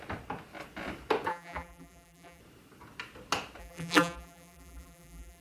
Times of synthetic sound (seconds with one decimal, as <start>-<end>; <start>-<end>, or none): 1.3-2.4; 3.6-5.4